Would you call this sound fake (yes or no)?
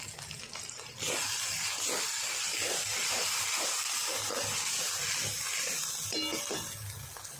no